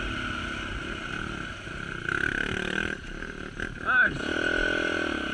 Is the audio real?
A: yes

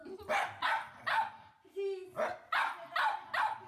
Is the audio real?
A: yes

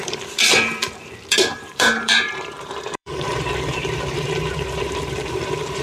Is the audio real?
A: no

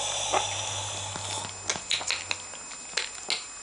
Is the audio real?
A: yes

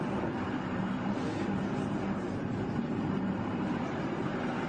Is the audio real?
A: no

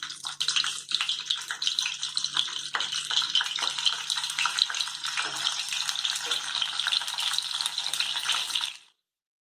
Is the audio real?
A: yes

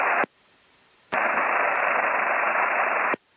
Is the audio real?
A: no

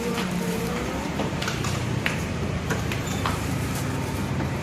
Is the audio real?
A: no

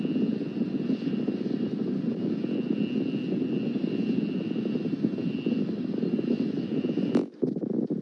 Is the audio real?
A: yes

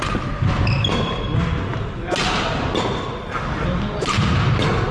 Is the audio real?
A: yes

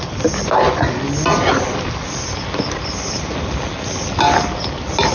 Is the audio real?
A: yes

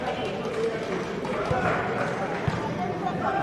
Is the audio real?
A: no